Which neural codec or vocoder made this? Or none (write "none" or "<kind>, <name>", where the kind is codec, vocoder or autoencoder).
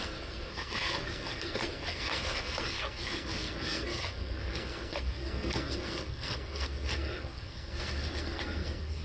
codec, SNAC